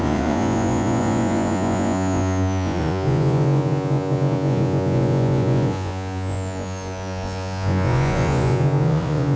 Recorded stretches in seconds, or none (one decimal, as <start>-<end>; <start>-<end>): none